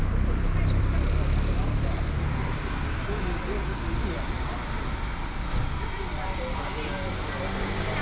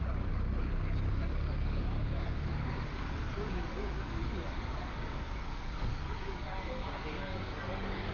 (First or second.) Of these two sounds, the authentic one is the first